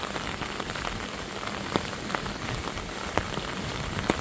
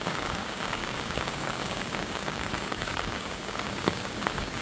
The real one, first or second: first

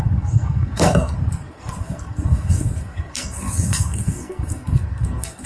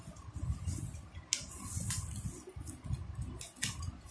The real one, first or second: second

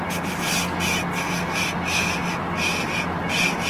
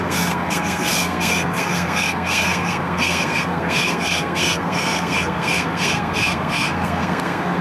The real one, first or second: first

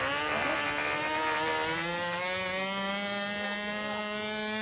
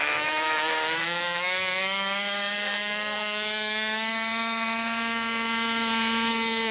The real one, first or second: first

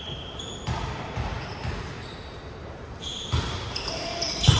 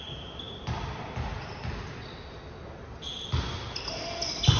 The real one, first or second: second